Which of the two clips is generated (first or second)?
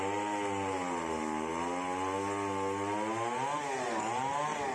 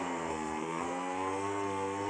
second